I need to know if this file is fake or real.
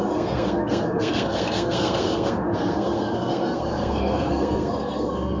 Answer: fake